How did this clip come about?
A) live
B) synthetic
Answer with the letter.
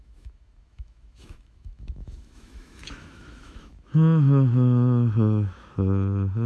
B